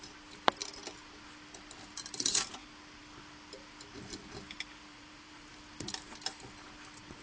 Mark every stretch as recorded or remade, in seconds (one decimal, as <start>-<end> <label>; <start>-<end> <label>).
0.0-4.9 recorded; 4.9-5.5 remade; 5.5-7.2 recorded